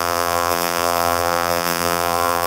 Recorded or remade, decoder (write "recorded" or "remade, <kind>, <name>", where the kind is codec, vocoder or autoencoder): remade, vocoder, BigVGAN v2